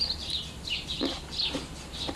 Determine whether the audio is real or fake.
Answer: fake